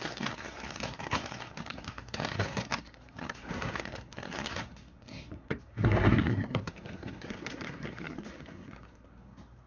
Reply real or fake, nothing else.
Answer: fake